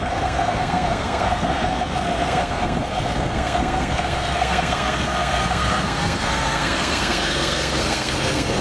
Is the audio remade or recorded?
remade